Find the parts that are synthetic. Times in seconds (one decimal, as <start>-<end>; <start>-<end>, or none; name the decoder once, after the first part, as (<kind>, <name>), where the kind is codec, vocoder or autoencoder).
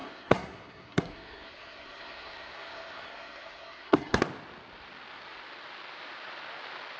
0.0-4.2 (codec, SNAC)